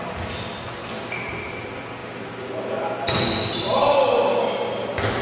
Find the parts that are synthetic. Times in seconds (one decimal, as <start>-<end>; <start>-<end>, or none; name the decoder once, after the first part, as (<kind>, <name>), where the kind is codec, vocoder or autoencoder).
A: none